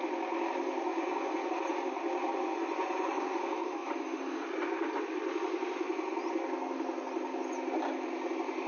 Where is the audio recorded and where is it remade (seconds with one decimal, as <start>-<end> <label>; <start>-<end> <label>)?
0.0-0.9 recorded; 0.9-1.5 remade; 1.5-2.3 recorded; 2.3-3.4 remade; 3.4-8.7 recorded

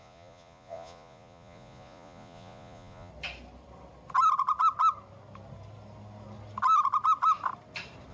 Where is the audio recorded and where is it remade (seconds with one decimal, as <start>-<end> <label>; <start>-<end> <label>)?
0.0-3.1 remade; 3.1-8.1 recorded

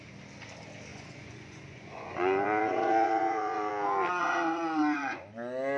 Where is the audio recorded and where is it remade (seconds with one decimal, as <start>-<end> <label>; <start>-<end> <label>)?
0.0-0.9 recorded; 0.9-3.7 remade; 3.7-4.2 recorded; 4.2-5.2 remade; 5.2-5.8 recorded

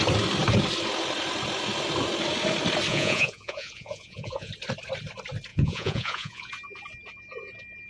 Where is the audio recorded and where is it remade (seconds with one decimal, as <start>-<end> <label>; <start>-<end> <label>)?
0.0-2.9 recorded; 2.9-4.5 remade; 4.5-5.5 recorded; 5.5-6.5 remade; 6.5-7.9 recorded

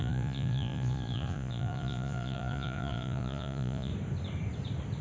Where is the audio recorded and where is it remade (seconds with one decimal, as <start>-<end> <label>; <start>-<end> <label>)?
0.0-3.9 remade; 3.9-5.0 recorded